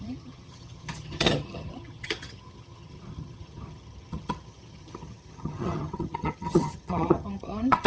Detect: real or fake fake